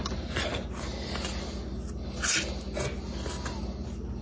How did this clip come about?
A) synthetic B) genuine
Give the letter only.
B